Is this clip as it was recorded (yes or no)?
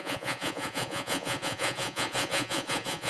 no